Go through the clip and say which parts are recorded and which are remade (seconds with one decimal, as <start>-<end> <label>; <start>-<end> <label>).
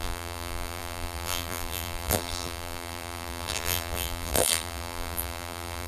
0.0-5.9 remade